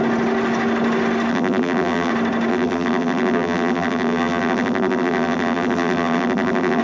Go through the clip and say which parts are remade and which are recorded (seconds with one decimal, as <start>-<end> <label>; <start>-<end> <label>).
0.0-1.3 recorded; 1.3-2.1 remade; 2.1-2.5 recorded; 2.5-6.8 remade